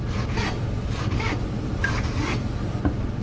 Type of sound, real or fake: real